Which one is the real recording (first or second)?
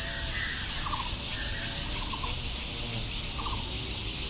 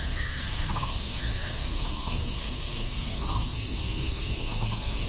first